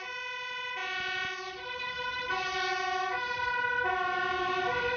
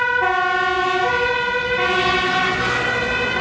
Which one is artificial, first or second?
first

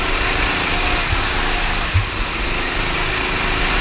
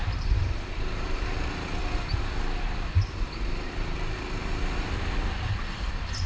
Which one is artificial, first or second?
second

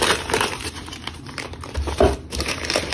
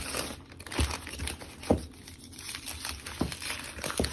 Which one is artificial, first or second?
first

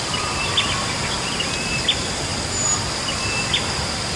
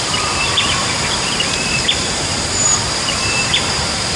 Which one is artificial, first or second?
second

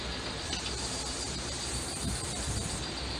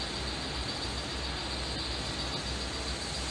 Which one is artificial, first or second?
first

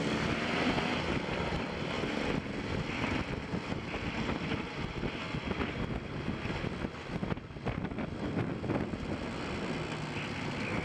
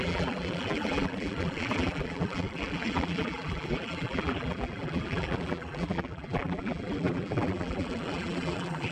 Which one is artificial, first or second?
second